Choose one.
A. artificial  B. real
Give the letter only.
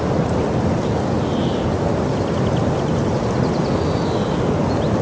B